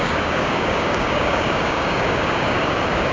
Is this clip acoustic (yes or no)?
no